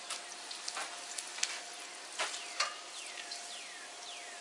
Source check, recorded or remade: recorded